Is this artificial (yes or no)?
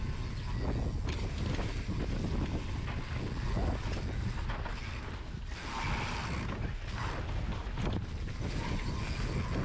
no